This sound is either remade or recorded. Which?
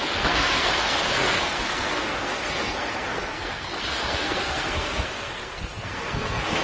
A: remade